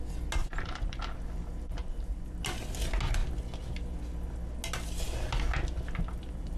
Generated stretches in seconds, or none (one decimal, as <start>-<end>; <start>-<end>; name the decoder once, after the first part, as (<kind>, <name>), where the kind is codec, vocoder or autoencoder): 0.4-1.0 (vocoder, BigVGAN v2); 1.8-2.4